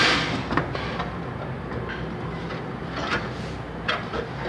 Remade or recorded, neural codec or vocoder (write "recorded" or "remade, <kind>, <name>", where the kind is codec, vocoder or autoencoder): recorded